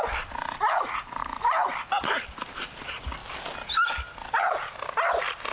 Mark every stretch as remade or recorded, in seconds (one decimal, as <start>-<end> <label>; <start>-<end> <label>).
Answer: 0.0-5.5 recorded